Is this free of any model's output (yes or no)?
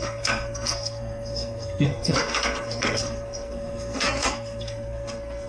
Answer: no